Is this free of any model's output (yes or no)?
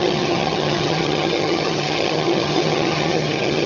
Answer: no